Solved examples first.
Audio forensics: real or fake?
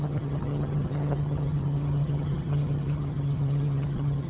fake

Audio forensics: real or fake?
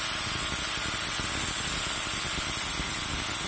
real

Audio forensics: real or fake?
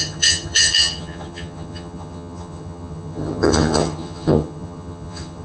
fake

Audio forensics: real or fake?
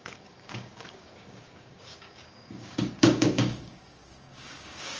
fake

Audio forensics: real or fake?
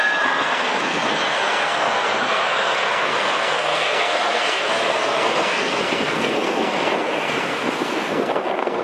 fake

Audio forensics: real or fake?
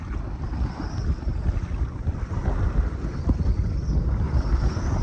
real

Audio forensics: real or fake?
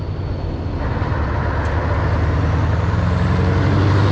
real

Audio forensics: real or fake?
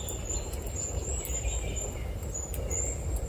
real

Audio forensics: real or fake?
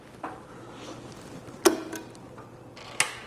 real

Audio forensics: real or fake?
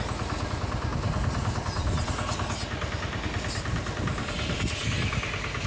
real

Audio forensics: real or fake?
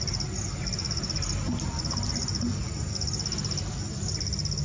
real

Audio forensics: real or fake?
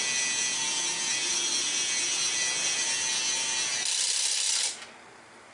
real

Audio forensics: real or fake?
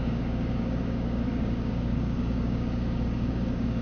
fake